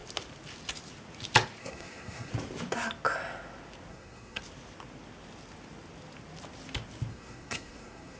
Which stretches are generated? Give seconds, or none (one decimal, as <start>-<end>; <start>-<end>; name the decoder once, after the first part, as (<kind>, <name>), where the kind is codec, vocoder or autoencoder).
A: 1.6-2.3 (codec, SNAC); 3.9-4.4; 7.1-8.2